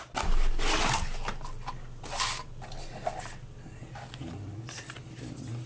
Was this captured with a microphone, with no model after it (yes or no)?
yes